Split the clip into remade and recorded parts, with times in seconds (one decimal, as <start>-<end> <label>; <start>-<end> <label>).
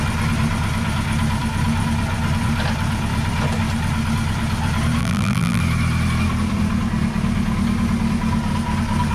0.0-5.0 recorded; 5.0-5.6 remade; 5.6-9.1 recorded